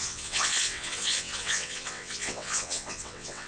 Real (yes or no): no